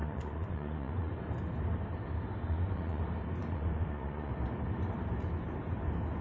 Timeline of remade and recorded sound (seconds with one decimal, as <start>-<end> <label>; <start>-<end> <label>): 0.0-1.1 remade; 1.1-2.5 recorded; 2.5-3.0 remade; 3.0-3.4 recorded; 3.4-4.3 remade; 4.3-6.2 recorded